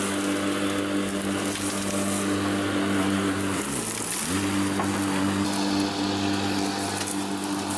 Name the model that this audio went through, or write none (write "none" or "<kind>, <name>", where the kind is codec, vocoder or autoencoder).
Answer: none